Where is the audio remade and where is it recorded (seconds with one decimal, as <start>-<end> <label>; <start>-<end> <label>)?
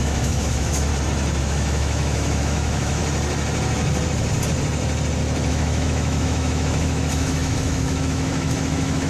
0.0-0.9 remade; 0.9-1.4 recorded; 1.4-3.0 remade; 3.0-5.5 recorded; 5.5-9.1 remade